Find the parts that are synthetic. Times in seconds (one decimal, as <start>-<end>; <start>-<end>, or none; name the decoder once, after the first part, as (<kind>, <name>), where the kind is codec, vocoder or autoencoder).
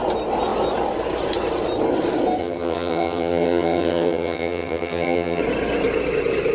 2.4-5.4 (vocoder, HiFi-GAN)